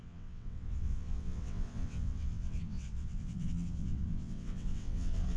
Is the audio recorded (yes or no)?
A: no